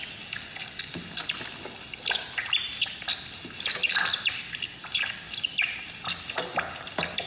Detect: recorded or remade recorded